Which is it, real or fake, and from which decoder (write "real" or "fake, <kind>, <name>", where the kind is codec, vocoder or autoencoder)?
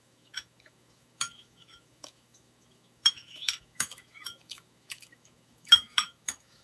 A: fake, autoencoder, DAC-VAE